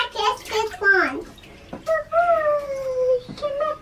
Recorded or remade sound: recorded